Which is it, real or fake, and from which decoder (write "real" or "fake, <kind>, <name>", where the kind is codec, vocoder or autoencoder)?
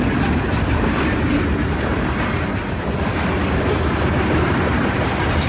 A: real